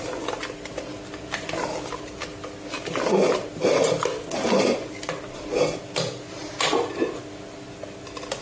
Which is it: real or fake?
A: real